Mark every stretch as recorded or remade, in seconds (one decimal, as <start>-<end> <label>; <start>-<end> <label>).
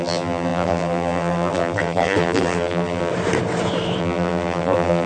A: 0.0-3.1 remade; 3.1-4.0 recorded; 4.0-5.1 remade